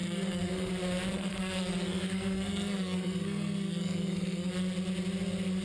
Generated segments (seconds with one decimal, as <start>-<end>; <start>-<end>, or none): 0.0-0.7; 1.1-4.5